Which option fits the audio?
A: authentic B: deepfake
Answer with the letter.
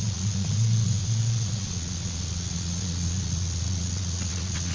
B